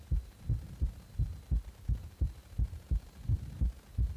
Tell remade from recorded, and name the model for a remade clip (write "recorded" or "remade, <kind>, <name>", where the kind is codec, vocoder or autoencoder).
recorded